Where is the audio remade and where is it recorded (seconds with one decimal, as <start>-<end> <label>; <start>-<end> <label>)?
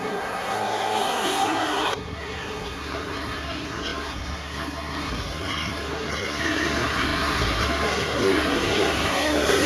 0.0-9.7 remade